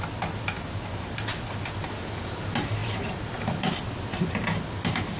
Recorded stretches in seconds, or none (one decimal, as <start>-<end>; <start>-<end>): 0.0-1.3; 2.0-2.8; 4.3-5.2